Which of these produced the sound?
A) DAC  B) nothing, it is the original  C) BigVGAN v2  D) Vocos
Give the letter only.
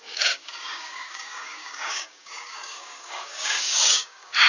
A